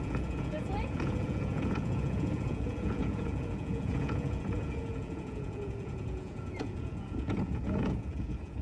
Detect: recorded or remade remade